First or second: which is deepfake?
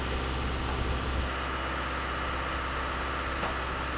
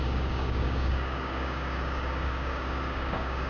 second